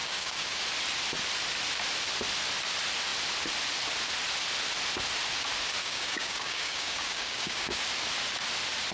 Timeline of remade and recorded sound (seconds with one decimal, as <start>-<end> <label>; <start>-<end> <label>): 0.0-0.6 remade; 0.6-5.8 recorded; 5.8-7.8 remade; 7.8-8.9 recorded